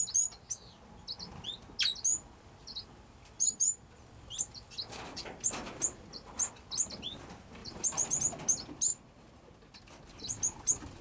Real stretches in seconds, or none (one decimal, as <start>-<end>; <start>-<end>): 0.0-2.1; 6.5-7.6; 8.2-11.0